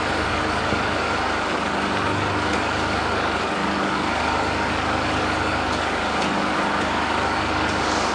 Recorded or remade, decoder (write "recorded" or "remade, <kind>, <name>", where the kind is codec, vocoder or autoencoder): remade, codec, DAC